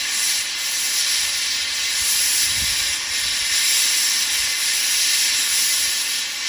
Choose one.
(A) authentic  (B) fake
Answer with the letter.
A